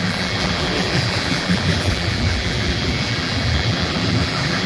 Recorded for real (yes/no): no